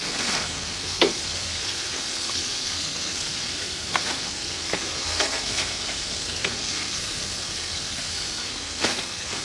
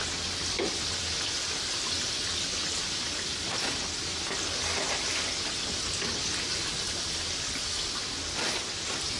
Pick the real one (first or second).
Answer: second